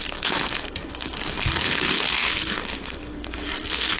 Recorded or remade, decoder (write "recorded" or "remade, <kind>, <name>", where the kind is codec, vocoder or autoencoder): remade, codec, SNAC